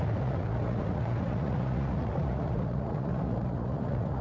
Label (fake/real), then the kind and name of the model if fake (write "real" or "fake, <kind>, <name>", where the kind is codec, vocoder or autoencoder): fake, vocoder, Vocos